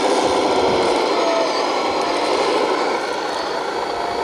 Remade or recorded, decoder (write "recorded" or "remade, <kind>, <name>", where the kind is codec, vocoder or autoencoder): recorded